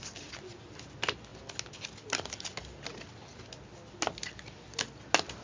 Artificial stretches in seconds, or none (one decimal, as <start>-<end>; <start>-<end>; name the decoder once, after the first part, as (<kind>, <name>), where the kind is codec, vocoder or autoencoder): none